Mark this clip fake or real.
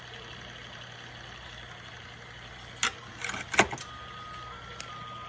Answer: real